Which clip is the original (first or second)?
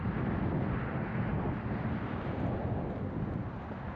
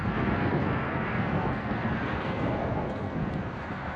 first